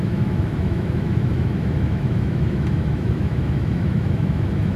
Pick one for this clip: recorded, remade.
remade